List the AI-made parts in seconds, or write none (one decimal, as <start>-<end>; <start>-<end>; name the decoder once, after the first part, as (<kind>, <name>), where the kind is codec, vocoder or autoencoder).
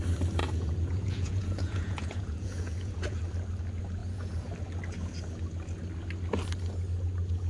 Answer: 0.4-3.2 (vocoder, Vocos); 4.0-4.5